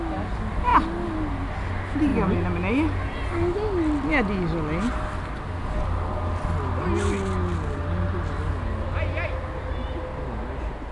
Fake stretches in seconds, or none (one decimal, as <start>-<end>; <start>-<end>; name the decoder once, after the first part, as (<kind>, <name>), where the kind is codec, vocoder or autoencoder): none